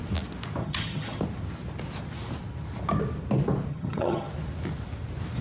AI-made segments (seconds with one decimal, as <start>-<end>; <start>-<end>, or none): 0.6-1.2; 3.7-4.3